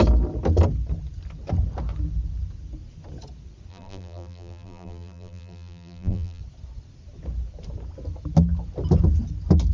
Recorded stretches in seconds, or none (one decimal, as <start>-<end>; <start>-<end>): 0.0-3.7; 6.4-9.7